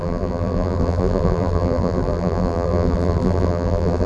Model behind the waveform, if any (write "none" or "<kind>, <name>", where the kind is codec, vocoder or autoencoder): vocoder, BigVGAN v2